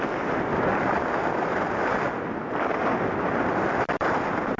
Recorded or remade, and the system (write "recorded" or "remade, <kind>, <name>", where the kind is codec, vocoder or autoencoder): recorded